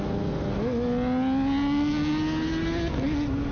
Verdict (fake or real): real